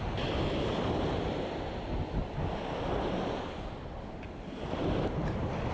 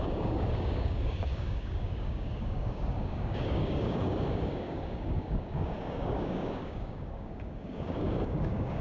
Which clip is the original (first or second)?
first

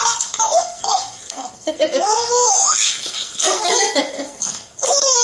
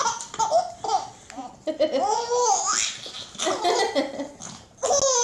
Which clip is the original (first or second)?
second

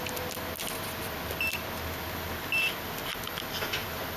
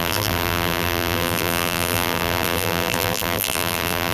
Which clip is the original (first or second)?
first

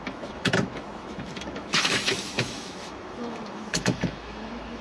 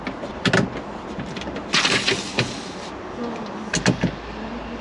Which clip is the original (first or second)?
second